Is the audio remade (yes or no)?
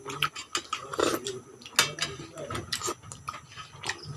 no